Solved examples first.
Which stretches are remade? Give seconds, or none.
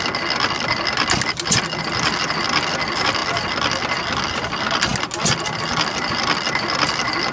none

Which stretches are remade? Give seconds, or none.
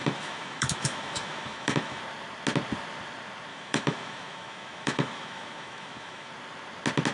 0.0-2.0 (autoencoder, DAC-VAE); 3.5-6.3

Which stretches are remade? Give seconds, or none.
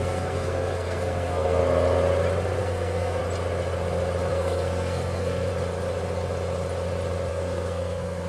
0.0-1.6 (codec, SNAC); 2.6-3.2; 4.3-5.5; 7.3-8.3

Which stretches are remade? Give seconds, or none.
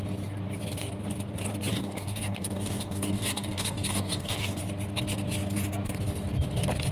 1.7-4.6 (codec, DAC)